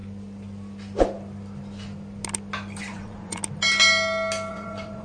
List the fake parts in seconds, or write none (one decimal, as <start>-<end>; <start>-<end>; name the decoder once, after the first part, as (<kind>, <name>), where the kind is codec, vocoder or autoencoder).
2.8-3.4 (vocoder, Vocos); 4.5-5.0

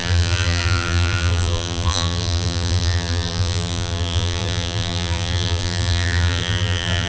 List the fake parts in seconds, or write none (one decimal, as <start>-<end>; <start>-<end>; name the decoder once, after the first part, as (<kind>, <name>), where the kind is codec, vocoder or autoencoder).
0.0-7.1 (vocoder, BigVGAN v2)

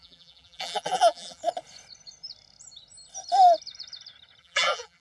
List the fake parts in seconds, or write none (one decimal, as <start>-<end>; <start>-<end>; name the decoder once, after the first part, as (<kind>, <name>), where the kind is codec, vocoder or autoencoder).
0.0-1.4 (vocoder, BigVGAN v2); 4.4-5.0

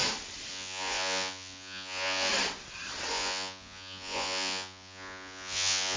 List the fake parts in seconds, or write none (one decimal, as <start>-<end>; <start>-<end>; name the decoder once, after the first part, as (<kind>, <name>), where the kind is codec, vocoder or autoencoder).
0.5-2.3 (vocoder, Vocos); 3.1-6.0

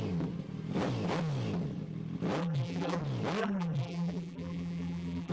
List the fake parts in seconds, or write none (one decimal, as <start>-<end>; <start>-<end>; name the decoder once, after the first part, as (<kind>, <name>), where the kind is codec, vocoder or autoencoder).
2.4-3.0 (vocoder, BigVGAN v2); 3.4-5.3